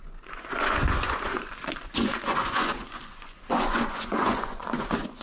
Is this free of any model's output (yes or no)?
no